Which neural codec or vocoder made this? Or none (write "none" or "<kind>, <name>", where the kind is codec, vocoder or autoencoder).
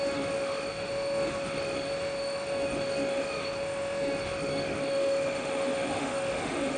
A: autoencoder, DAC-VAE